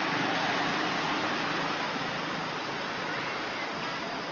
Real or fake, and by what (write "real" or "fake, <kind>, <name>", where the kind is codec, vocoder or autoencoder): real